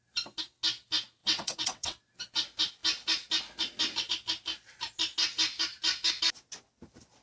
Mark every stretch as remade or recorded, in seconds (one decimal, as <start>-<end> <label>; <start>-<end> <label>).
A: 0.0-1.2 recorded; 1.2-2.0 remade; 2.0-7.2 recorded